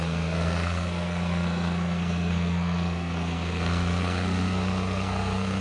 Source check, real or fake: fake